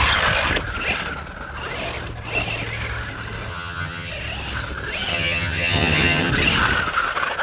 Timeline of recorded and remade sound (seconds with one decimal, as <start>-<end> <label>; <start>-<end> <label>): 0.0-3.5 recorded; 3.5-4.1 remade; 4.1-5.1 recorded; 5.1-6.3 remade; 6.3-7.4 recorded